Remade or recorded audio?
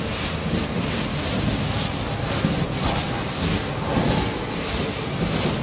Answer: recorded